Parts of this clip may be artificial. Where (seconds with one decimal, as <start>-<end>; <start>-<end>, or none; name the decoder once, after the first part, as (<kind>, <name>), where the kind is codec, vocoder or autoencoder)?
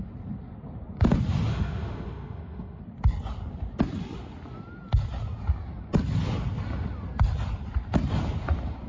1.5-2.8 (autoencoder, DAC-VAE)